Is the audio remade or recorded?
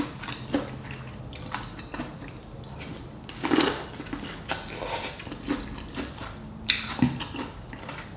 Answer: recorded